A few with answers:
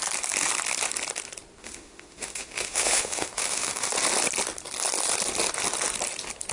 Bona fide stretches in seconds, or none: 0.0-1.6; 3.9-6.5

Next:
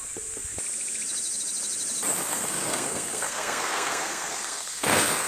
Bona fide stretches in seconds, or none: 0.0-2.3

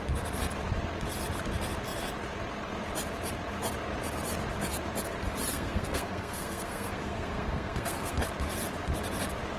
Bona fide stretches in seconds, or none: 0.0-5.5; 8.2-9.6

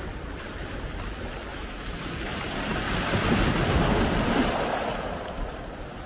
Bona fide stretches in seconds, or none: 0.0-1.5; 2.2-6.1

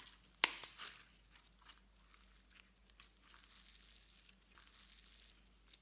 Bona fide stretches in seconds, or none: 0.0-5.8